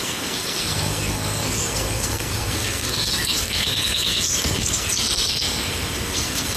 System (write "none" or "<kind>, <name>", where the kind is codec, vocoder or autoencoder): codec, SNAC